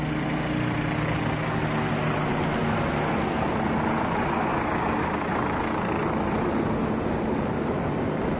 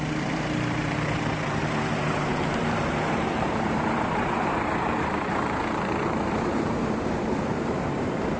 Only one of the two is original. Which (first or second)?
first